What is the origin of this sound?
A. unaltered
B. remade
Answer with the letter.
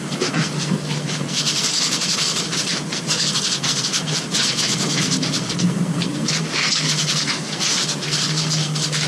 B